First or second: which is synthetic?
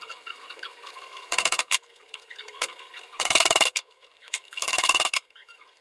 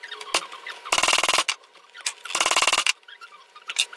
first